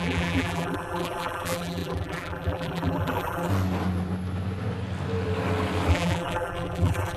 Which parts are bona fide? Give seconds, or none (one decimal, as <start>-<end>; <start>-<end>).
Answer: 3.5-5.9